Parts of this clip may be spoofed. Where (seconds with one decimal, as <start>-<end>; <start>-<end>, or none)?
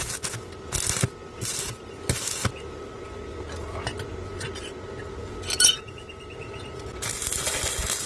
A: none